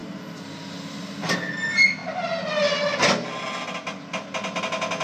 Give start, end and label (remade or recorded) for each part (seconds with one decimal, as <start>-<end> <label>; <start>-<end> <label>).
0.0-5.0 recorded